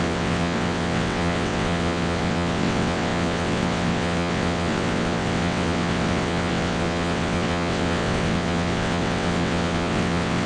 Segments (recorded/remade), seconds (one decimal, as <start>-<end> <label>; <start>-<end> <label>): 0.0-10.5 remade